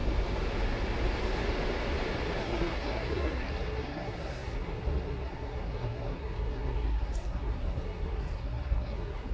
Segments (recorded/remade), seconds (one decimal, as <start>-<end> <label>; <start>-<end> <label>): 0.0-2.4 recorded; 2.4-9.3 remade